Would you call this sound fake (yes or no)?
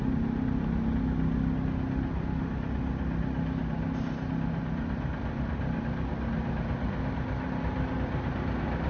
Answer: no